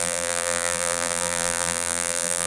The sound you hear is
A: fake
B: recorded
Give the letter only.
A